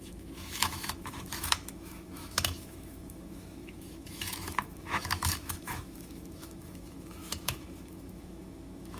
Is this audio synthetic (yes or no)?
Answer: yes